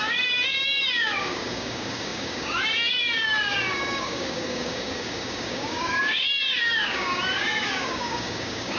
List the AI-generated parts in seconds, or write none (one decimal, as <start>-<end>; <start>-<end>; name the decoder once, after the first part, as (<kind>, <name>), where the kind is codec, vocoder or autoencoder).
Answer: 0.0-8.8 (codec, DAC)